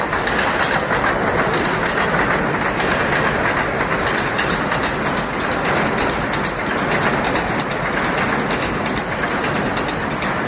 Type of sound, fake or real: real